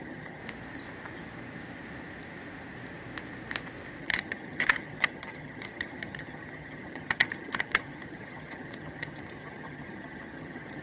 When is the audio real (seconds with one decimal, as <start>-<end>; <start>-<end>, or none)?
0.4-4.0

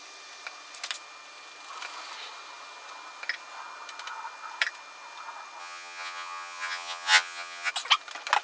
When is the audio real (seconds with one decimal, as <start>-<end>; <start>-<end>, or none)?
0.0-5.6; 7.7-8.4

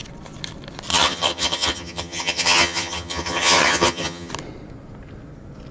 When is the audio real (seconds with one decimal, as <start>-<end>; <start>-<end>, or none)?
0.0-0.9; 4.3-5.7

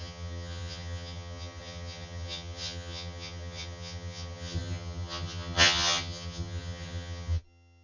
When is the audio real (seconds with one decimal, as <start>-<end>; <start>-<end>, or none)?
none

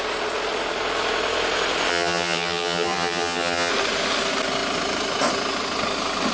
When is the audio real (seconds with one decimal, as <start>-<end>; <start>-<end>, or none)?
0.0-1.9; 3.7-6.3

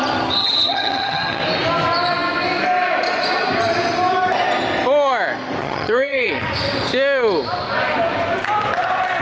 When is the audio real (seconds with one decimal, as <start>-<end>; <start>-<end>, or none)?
0.0-0.4; 1.4-5.6; 6.3-9.2

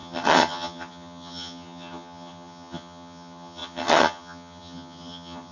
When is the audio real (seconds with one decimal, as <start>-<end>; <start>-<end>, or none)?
none